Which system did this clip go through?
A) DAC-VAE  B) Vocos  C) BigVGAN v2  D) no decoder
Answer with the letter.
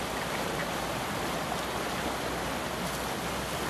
D